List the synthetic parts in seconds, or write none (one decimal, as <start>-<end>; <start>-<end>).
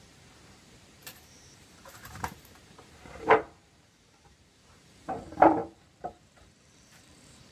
0.0-5.6; 6.2-7.5